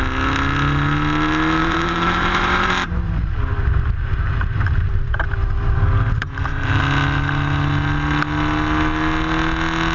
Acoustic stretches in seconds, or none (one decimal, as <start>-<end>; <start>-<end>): 0.0-1.6; 6.8-9.9

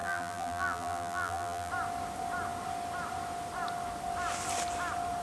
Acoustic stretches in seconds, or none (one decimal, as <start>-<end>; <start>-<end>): 1.7-5.2

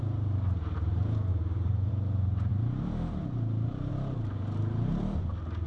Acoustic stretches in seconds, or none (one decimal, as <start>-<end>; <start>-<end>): 0.0-1.3; 1.9-2.5; 3.9-5.7

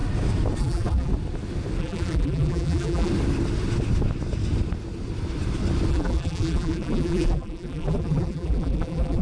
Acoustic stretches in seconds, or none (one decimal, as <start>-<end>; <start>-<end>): 0.0-0.6; 1.1-1.8; 3.1-5.9

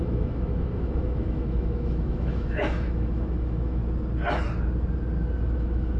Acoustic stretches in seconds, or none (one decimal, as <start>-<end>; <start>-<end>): 3.8-5.6

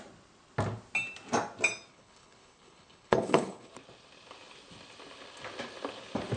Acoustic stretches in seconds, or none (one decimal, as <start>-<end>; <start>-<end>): 0.0-1.9; 3.7-6.4

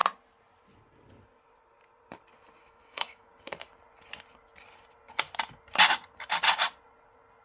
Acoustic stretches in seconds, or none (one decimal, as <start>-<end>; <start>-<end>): 0.0-2.6; 3.3-7.4

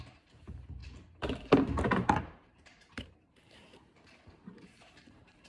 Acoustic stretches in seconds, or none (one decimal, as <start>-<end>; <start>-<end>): 0.8-1.8